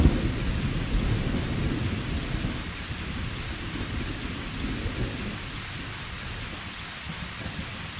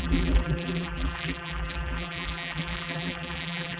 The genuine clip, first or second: first